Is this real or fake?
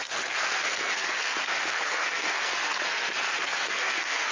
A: fake